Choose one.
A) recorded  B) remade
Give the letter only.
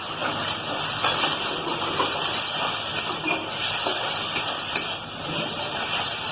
A